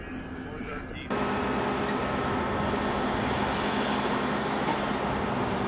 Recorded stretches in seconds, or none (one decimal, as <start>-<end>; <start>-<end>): 0.0-5.7